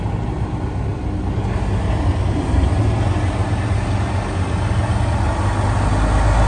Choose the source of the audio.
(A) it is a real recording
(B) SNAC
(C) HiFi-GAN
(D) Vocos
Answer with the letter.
A